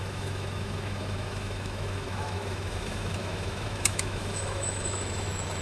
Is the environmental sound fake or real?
fake